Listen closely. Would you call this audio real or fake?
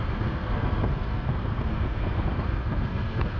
fake